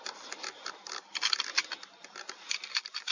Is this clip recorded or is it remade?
recorded